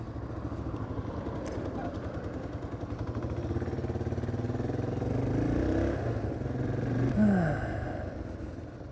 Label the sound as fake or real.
real